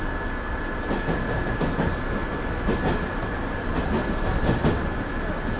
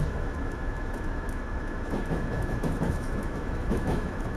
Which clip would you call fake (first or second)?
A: second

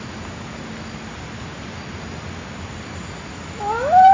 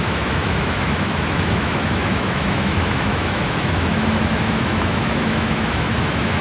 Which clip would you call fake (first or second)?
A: second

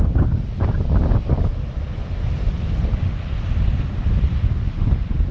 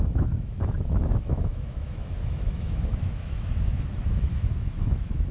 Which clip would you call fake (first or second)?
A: second